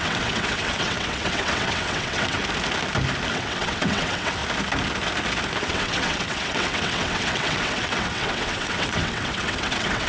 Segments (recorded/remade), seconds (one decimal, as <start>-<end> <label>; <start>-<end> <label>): 0.0-2.4 remade; 2.4-3.3 recorded; 3.3-4.4 remade; 4.4-5.6 recorded; 5.6-10.1 remade